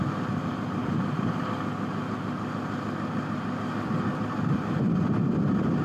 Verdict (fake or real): real